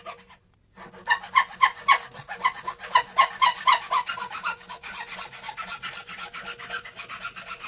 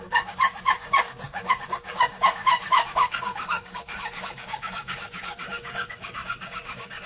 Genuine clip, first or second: first